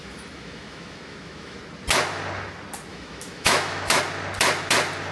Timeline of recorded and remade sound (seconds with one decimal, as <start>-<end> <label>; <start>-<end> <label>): 0.0-1.6 remade; 1.6-2.9 recorded; 2.9-4.0 remade; 4.0-5.1 recorded